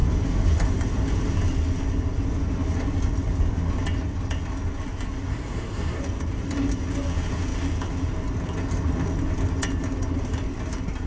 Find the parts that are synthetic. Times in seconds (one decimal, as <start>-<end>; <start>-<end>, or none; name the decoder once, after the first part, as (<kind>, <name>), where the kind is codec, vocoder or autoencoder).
5.3-6.0 (codec, SNAC)